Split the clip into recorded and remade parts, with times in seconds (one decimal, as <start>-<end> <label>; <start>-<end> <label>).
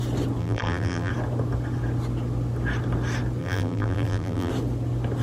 0.0-0.4 recorded; 0.4-1.1 remade; 1.1-3.4 recorded; 3.4-4.5 remade; 4.5-5.2 recorded